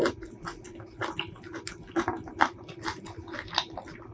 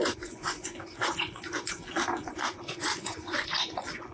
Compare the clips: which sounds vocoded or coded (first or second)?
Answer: second